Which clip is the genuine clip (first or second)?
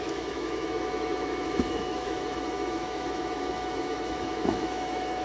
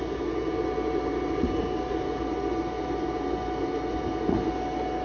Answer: second